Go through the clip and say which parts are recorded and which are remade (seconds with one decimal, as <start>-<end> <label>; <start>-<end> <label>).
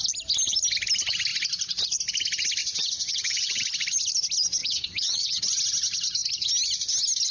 0.0-2.6 recorded; 2.6-3.6 remade; 3.6-4.6 recorded; 4.6-5.4 remade; 5.4-7.3 recorded